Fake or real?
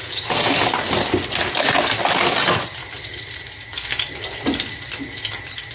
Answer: real